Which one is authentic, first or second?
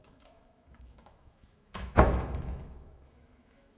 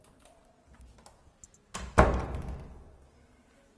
second